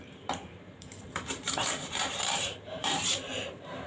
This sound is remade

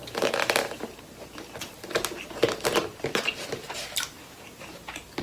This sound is remade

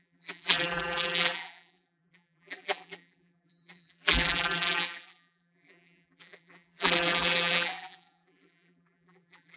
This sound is remade